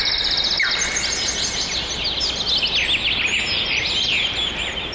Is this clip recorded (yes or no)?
yes